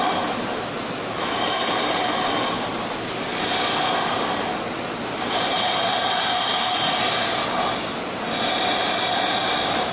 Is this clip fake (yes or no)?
no